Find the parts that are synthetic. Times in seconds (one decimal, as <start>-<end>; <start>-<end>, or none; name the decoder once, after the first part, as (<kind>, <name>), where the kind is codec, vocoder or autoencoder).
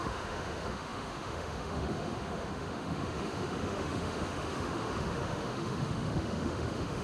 0.0-7.0 (autoencoder, DAC-VAE)